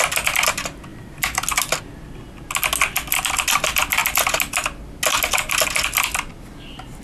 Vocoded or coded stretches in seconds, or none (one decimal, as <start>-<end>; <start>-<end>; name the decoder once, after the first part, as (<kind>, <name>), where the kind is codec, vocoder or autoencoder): none